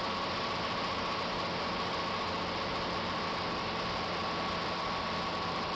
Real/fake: real